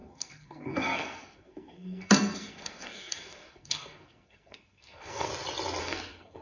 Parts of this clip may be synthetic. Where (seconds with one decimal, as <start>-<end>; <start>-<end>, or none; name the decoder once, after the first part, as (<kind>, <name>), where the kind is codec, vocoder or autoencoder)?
0.0-5.3 (codec, SNAC); 5.8-6.4